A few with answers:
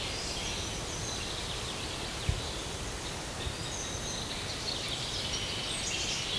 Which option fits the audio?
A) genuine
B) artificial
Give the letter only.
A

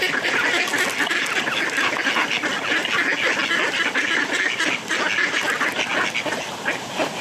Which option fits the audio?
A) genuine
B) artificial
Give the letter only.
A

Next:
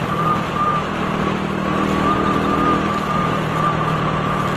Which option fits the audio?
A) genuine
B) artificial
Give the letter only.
A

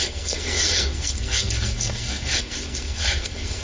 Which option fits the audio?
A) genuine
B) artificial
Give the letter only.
B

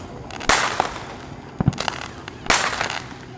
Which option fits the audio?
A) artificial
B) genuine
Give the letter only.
B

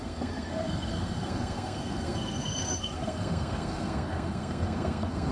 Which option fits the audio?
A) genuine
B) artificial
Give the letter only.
B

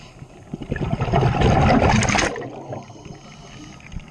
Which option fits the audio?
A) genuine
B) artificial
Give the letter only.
A